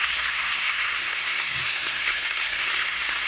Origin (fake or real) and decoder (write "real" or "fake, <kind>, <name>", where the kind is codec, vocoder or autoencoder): fake, codec, SNAC